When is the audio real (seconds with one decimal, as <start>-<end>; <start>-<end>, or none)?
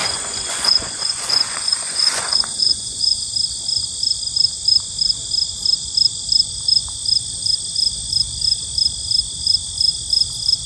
3.3-10.7